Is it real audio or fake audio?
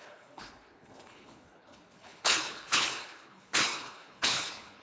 fake